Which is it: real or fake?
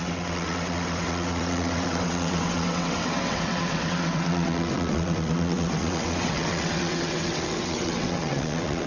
fake